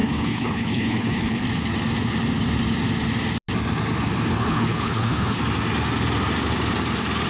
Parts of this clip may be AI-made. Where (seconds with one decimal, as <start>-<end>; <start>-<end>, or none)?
0.0-1.4; 4.3-5.4